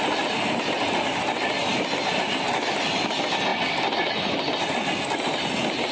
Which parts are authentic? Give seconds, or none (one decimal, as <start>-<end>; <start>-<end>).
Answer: 0.0-5.9